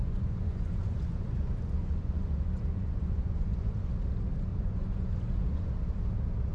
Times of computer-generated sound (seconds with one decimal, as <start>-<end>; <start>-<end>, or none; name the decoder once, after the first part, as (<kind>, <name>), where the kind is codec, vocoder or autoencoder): 0.0-3.9 (vocoder, Vocos); 4.5-5.7